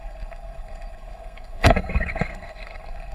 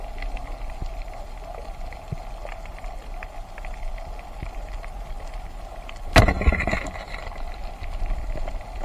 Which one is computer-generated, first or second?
first